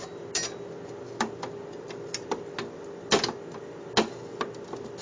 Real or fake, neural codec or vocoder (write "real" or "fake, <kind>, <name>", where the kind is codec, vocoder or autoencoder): real